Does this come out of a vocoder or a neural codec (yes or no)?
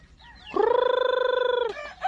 no